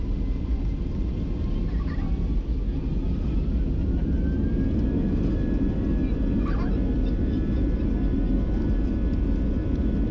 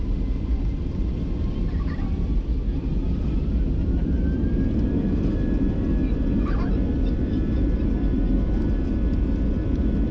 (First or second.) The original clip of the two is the first